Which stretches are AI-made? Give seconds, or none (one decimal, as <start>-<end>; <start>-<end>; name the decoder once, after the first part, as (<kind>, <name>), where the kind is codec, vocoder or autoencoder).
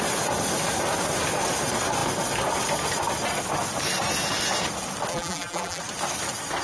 5.1-5.8 (vocoder, BigVGAN v2)